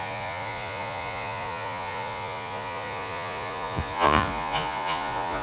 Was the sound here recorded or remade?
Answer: remade